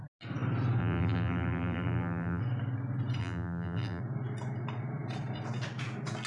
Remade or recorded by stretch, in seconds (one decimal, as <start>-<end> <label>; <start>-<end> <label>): 0.0-0.8 recorded; 0.8-2.4 remade; 2.4-3.2 recorded; 3.2-4.0 remade; 4.0-6.3 recorded